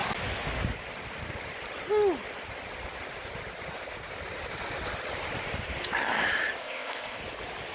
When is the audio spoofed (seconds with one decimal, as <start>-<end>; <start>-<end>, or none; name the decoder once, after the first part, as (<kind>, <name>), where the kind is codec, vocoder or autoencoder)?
6.6-7.2 (codec, ZipCodec)